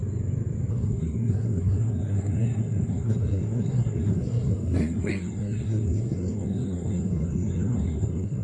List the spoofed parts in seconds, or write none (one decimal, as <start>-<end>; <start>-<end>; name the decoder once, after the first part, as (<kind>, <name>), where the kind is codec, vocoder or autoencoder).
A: 0.7-8.4 (codec, SNAC)